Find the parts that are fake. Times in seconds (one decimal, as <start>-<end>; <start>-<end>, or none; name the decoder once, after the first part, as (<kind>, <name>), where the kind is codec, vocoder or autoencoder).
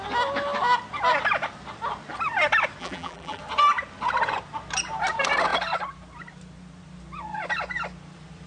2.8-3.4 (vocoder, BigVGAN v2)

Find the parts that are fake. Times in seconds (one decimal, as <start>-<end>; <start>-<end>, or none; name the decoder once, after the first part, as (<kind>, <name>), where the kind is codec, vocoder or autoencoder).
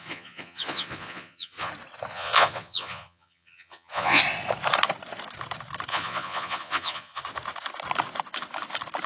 0.0-1.7 (vocoder, Vocos); 2.1-4.2; 5.9-7.2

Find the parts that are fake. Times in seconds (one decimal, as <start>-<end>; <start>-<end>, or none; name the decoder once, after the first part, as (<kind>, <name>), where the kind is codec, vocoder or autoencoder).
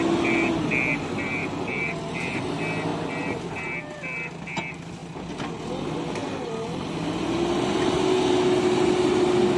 1.4-2.5 (vocoder, BigVGAN v2); 6.2-6.9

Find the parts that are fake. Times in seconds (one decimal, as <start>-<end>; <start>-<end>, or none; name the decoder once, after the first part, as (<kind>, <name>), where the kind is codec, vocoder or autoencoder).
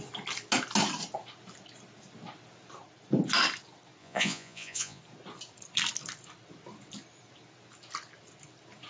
4.0-5.0 (vocoder, Vocos)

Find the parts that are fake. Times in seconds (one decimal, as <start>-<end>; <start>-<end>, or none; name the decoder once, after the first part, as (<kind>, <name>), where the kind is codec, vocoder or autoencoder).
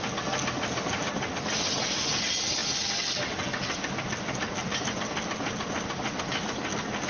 none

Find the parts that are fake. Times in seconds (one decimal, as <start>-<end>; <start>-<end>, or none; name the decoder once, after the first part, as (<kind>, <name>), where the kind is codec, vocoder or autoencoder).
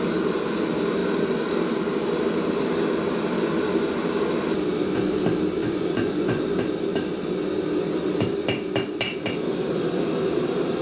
5.6-6.4 (vocoder, Vocos)